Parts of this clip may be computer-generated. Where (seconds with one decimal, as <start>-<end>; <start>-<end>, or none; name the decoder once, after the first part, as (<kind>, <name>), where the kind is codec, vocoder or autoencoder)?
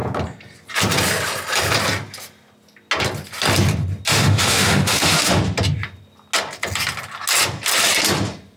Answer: 4.1-5.4 (autoencoder, DAC-VAE)